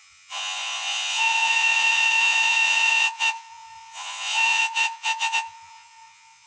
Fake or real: fake